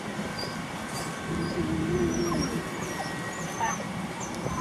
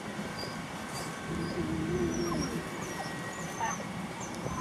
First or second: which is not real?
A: second